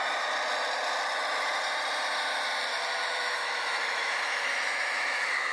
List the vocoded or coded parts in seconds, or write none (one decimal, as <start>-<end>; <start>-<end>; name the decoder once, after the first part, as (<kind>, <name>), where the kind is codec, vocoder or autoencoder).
2.7-5.5 (autoencoder, DAC-VAE)